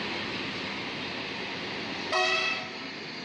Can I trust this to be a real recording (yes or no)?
yes